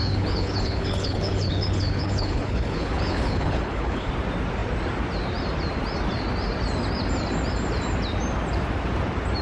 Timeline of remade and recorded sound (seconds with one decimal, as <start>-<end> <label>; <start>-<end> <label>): 0.0-4.1 remade; 4.1-9.4 recorded